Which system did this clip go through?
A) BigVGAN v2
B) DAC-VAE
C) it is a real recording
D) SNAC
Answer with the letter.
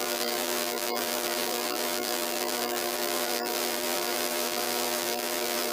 A